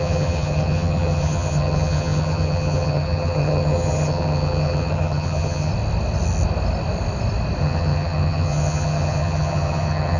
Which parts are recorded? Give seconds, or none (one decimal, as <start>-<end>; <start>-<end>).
5.7-7.6